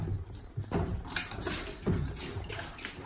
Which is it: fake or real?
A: fake